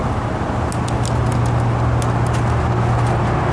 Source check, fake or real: real